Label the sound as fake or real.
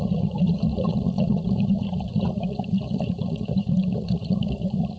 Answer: fake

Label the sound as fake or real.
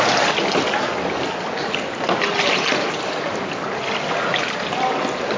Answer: real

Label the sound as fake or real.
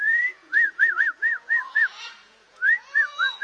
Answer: fake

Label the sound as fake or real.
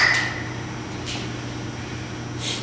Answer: real